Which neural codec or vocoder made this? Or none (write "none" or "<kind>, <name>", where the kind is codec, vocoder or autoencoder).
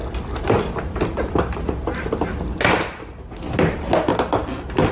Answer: none